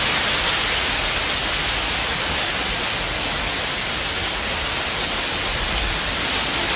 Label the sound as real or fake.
real